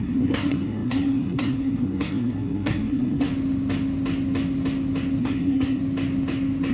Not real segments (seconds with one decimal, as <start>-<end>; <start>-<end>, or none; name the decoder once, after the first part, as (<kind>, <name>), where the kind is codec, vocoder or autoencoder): 0.0-3.3 (codec, SNAC); 5.2-5.8